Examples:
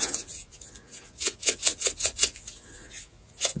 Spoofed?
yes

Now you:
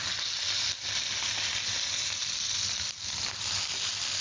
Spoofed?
no